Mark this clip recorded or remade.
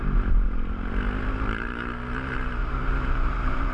remade